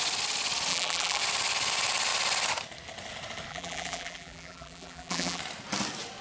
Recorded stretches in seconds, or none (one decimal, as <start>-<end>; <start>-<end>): 0.0-0.7; 1.2-3.5; 5.4-6.2